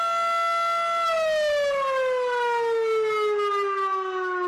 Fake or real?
real